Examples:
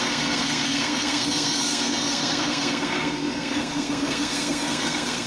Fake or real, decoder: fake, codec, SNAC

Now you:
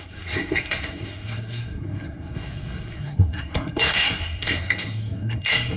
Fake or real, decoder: fake, codec, SNAC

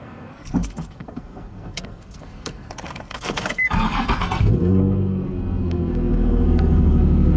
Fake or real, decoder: fake, codec, SNAC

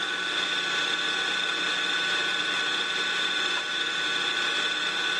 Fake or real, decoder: real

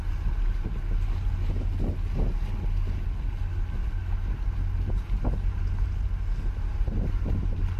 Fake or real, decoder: real